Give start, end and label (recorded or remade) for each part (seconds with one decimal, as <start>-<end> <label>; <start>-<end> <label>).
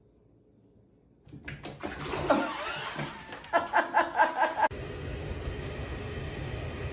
0.0-6.9 recorded